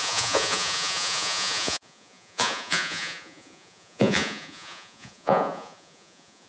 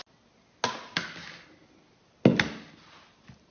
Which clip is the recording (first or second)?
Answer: second